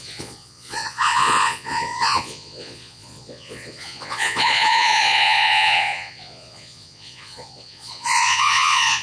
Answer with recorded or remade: remade